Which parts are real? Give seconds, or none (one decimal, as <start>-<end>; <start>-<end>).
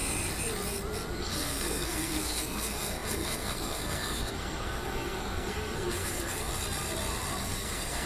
0.0-1.2; 6.5-7.4